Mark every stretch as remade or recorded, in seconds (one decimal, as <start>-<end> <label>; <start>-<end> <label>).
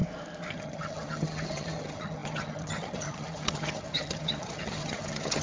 0.0-0.5 recorded; 0.5-5.4 remade